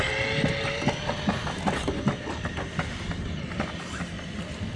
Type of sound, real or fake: real